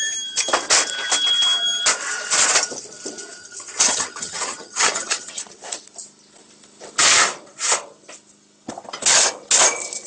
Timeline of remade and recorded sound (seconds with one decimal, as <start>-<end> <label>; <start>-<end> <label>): 0.0-3.4 recorded; 3.4-5.4 remade; 5.4-10.1 recorded